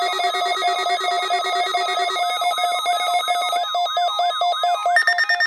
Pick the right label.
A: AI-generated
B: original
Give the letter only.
B